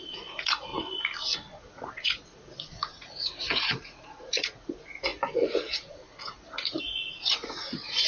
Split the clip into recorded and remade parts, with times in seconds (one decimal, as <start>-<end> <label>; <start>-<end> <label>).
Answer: 0.0-0.7 remade; 0.7-1.6 recorded; 1.6-8.1 remade